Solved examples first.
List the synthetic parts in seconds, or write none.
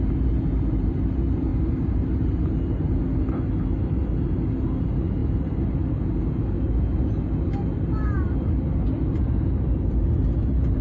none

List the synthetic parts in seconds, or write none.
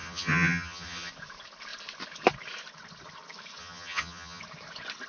0.0-1.1 (vocoder, HiFi-GAN); 3.6-4.4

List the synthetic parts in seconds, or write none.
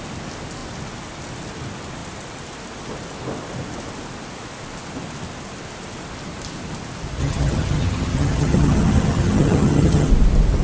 7.2-10.1 (vocoder, HiFi-GAN)